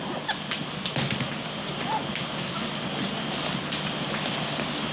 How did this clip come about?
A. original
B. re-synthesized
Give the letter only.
A